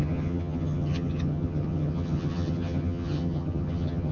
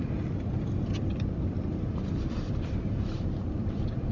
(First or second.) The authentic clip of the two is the second